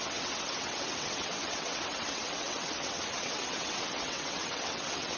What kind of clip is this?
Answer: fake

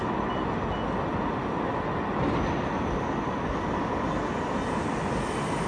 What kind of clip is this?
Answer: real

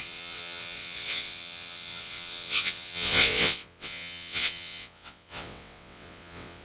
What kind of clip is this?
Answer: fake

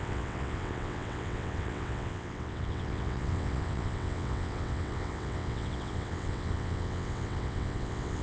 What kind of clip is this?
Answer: fake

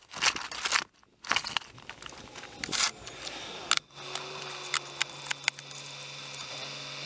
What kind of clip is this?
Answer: real